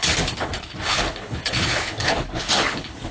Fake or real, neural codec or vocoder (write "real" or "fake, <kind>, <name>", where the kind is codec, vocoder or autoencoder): fake, codec, HILCodec